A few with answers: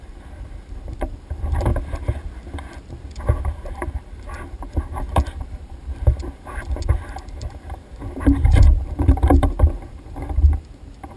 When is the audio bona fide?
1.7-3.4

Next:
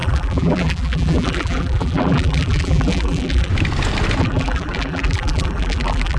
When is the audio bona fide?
3.5-4.2

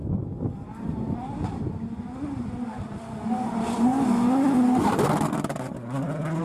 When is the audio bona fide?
0.0-2.6; 3.9-6.4

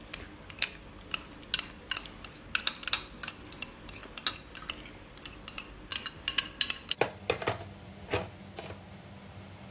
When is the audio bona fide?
0.0-9.7

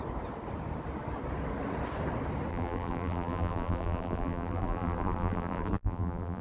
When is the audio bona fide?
0.0-2.5